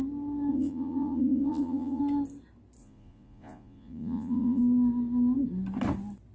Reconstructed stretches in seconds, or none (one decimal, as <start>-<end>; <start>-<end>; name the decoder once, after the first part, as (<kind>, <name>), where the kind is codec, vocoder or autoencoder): 0.5-2.0 (vocoder, Vocos); 2.8-4.6